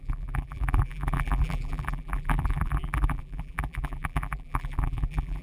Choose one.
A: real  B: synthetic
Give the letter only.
B